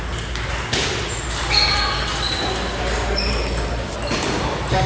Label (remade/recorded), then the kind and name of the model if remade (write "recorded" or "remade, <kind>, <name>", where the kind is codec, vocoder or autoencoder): recorded